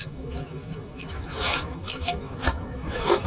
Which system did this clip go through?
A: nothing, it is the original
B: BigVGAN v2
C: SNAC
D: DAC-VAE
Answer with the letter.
D